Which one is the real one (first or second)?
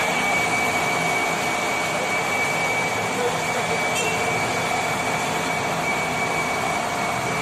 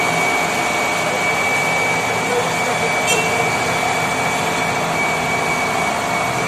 second